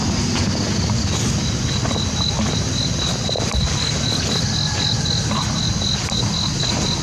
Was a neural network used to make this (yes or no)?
no